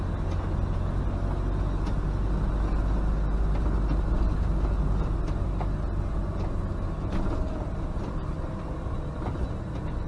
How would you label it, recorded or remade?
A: recorded